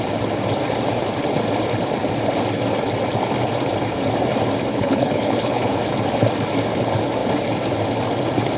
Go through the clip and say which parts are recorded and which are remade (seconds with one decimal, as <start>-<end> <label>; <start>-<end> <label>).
0.0-4.7 recorded; 4.7-5.8 remade; 5.8-8.6 recorded